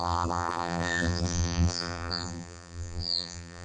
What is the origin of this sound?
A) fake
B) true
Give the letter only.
A